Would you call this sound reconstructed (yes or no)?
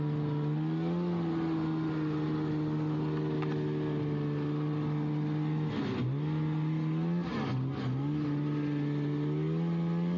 no